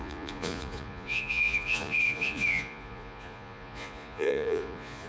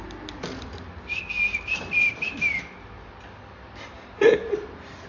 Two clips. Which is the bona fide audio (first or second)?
second